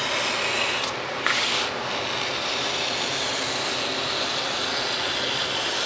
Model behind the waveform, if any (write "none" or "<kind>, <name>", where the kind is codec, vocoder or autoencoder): none